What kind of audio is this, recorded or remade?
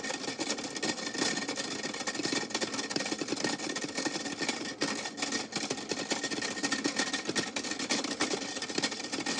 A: recorded